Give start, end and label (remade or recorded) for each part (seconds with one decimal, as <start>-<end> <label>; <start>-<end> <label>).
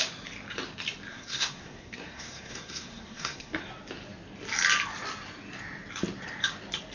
0.0-1.1 recorded; 1.1-3.6 remade; 3.6-6.9 recorded